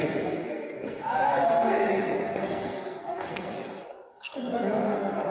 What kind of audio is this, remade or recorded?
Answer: remade